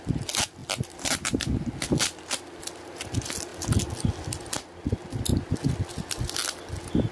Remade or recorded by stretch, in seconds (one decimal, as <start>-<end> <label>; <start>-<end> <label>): 0.0-7.1 recorded